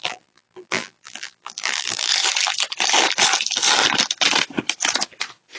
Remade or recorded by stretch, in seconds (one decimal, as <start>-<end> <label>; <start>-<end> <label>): 0.0-2.1 remade; 2.1-5.6 recorded